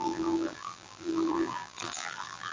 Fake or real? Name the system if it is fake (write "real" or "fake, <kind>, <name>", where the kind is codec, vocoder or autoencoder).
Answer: fake, vocoder, BigVGAN v2